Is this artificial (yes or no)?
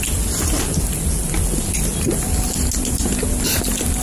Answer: no